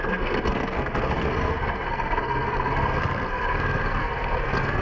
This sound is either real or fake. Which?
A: fake